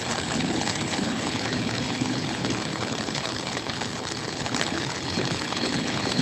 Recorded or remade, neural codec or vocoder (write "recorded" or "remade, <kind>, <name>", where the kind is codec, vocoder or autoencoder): remade, codec, HILCodec